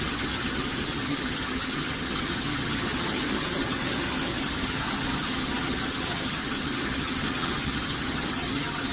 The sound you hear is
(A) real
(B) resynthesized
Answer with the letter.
B